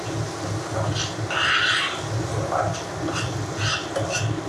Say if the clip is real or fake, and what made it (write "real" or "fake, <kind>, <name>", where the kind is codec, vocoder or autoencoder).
real